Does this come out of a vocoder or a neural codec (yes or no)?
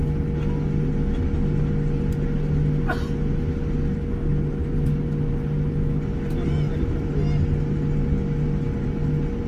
no